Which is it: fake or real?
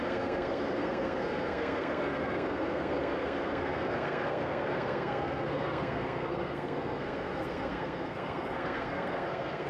fake